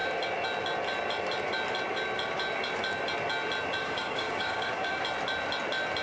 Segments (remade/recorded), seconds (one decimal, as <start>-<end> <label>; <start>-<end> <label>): 0.0-3.8 recorded; 3.8-5.0 remade; 5.0-6.0 recorded